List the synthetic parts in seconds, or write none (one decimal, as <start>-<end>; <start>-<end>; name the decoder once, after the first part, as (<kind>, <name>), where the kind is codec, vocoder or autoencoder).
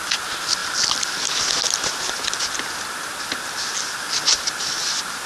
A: none